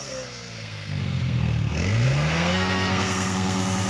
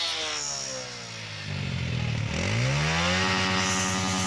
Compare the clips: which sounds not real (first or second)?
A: first